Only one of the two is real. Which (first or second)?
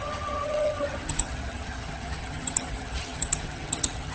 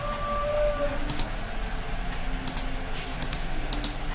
second